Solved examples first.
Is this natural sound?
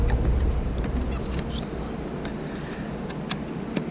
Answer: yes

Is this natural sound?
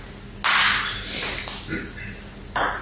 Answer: yes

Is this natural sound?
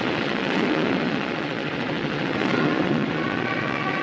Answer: no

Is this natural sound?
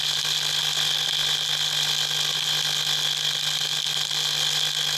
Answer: yes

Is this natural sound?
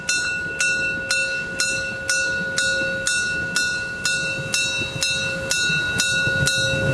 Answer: yes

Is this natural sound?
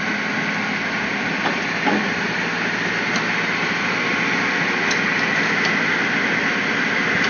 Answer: yes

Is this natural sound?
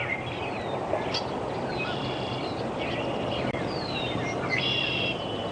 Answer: no